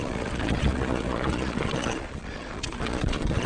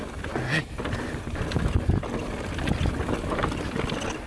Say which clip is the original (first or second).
second